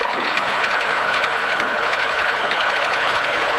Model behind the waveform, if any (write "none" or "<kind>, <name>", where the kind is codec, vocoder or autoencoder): codec, HILCodec